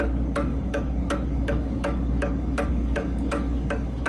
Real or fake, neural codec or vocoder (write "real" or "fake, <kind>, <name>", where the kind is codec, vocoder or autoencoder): fake, codec, DAC